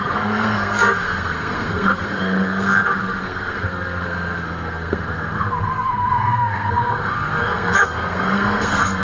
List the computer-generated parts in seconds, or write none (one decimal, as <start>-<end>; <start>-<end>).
0.0-9.0